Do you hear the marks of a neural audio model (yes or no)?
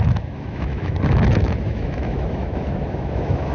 yes